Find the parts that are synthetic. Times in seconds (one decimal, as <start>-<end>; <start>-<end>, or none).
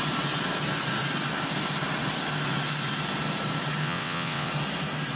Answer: 3.8-4.5